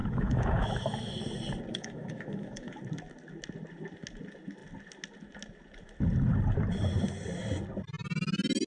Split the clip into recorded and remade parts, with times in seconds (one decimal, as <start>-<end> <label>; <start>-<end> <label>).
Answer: 0.0-1.1 remade; 1.1-1.7 recorded; 1.7-2.8 remade; 2.8-8.7 recorded

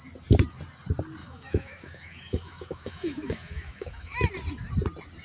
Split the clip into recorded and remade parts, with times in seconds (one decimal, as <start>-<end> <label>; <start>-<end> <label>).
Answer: 0.0-1.2 recorded; 1.2-4.3 remade; 4.3-5.2 recorded

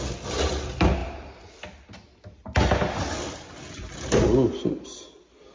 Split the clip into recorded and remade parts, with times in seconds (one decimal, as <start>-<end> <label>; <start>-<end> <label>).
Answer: 0.0-5.5 recorded

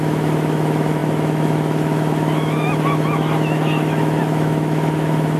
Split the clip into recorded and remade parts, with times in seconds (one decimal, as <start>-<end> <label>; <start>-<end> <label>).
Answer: 0.0-5.4 remade